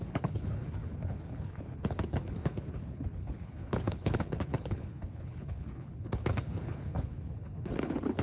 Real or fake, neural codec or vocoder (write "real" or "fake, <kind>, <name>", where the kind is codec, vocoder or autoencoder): fake, codec, HILCodec